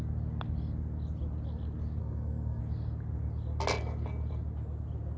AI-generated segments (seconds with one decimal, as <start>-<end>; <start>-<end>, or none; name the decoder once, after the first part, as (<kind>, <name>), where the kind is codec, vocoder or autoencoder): 2.0-2.6 (codec, SNAC)